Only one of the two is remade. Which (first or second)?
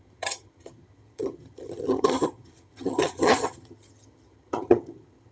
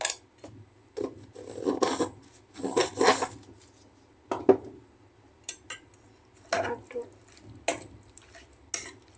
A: first